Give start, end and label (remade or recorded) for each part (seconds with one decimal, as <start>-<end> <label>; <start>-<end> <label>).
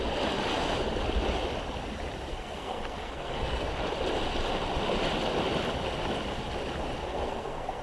0.0-2.3 recorded; 2.3-3.7 remade; 3.7-7.0 recorded; 7.0-7.8 remade